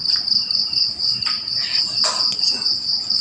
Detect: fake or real real